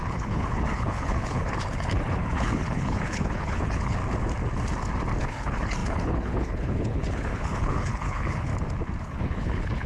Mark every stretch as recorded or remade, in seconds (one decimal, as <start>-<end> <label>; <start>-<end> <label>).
0.0-4.0 remade; 4.0-5.2 recorded; 5.2-8.5 remade; 8.5-9.0 recorded; 9.0-9.9 remade